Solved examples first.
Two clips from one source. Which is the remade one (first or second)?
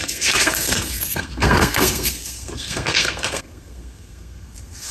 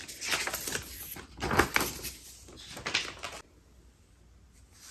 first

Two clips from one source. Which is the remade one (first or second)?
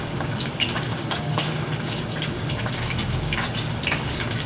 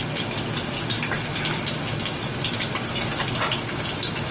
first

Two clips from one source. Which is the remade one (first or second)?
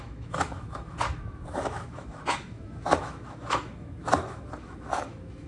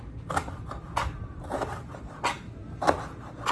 first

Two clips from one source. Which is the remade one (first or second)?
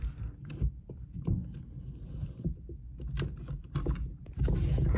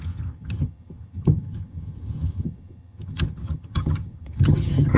second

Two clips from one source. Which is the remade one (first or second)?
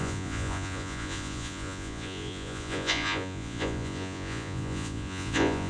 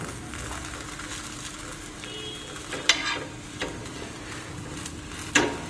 first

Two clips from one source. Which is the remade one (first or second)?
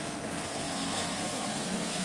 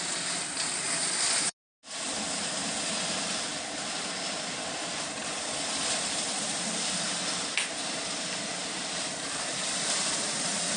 first